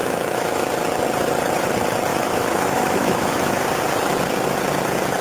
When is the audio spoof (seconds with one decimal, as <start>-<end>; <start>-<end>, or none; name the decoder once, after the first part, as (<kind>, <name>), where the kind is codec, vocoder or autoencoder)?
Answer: 0.0-0.7 (autoencoder, DAC-VAE); 2.1-3.6